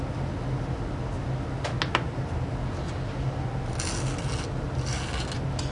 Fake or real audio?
real